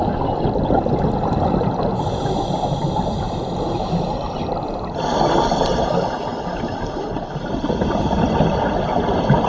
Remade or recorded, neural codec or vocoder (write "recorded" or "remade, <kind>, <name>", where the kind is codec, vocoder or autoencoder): recorded